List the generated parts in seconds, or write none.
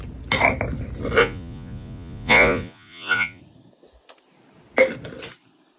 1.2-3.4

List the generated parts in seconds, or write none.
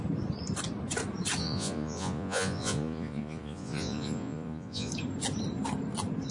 1.4-4.9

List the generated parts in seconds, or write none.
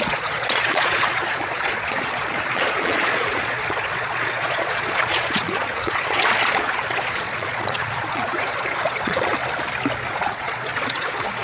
0.0-9.4; 10.1-11.4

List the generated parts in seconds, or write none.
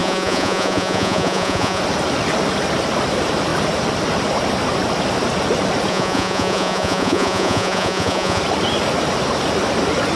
0.0-1.8; 5.9-8.4